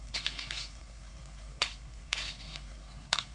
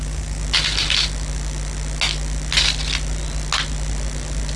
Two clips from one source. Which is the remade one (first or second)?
first